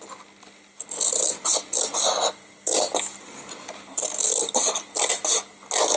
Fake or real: real